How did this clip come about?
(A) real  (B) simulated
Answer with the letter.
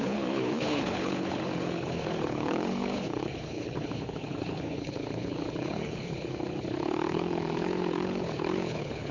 B